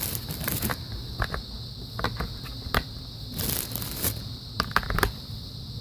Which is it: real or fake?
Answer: real